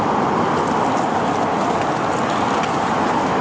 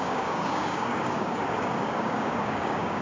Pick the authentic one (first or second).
first